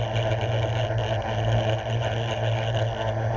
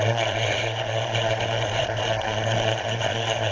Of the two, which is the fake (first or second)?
second